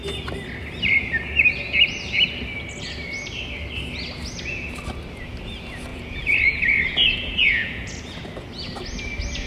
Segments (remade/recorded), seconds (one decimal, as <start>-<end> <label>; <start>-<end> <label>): 0.0-5.9 recorded; 5.9-7.9 remade; 7.9-9.5 recorded